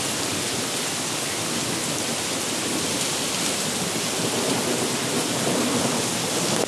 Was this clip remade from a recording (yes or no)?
no